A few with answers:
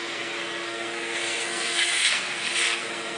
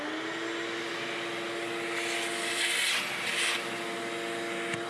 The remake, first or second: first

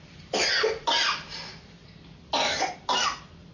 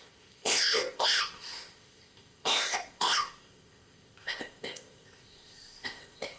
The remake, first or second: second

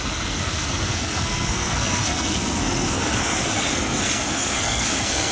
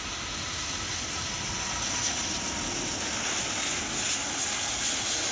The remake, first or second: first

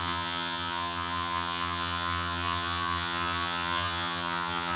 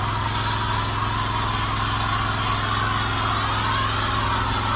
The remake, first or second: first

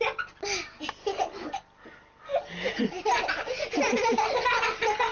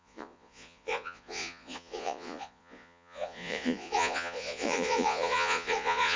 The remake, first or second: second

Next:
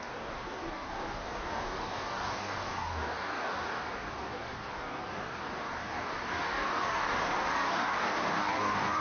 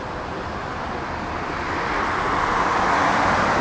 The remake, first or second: first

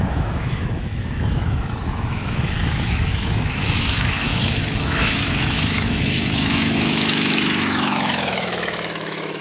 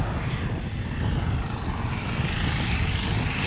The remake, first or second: first